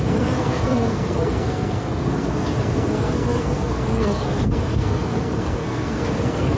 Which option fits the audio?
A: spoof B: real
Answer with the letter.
A